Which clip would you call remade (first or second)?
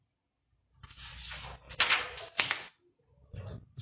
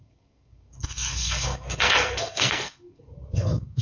second